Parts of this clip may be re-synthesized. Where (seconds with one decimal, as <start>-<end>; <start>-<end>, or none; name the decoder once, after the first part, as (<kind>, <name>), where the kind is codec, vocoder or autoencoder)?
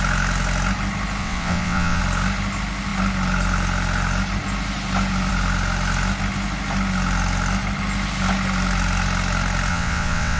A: 1.2-2.0 (vocoder, WaveNeXt); 9.7-10.4